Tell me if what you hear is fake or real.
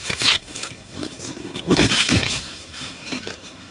fake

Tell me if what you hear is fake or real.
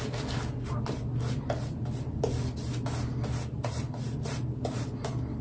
real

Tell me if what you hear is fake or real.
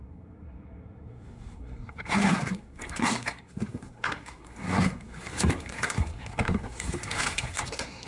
fake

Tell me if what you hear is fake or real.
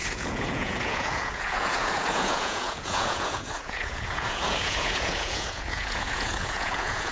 fake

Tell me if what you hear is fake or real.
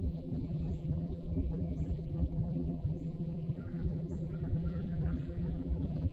fake